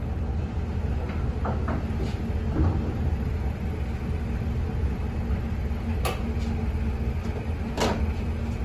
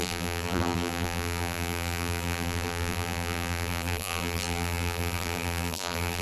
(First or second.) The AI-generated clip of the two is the second